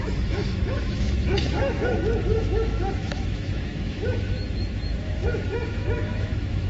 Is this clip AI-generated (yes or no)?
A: yes